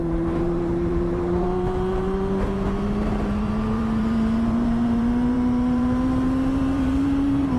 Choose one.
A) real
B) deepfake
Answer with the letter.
B